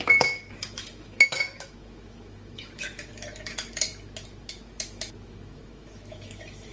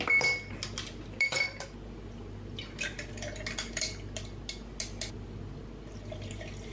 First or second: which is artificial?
first